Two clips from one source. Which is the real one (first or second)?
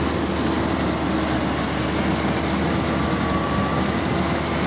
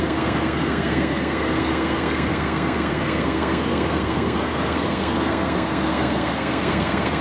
first